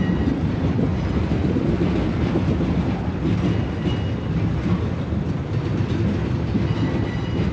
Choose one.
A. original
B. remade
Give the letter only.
A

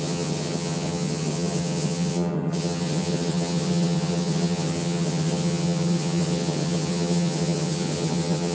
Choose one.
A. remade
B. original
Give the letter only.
A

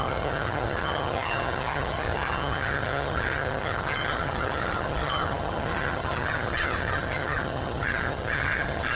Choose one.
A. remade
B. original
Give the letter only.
A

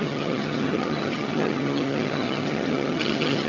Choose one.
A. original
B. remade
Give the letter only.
B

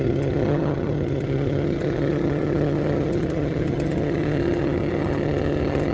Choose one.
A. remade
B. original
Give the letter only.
A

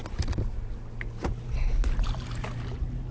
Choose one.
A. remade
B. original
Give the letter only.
B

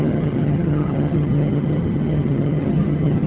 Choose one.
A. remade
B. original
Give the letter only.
A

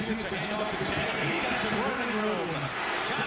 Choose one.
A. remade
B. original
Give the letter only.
B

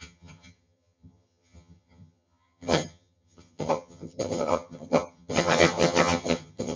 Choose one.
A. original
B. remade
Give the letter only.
B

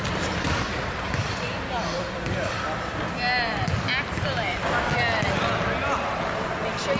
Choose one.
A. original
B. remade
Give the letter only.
A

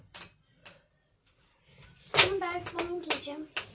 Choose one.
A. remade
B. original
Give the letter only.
B